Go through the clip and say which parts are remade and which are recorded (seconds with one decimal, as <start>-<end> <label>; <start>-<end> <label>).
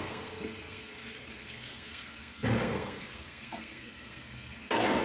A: 0.0-5.0 remade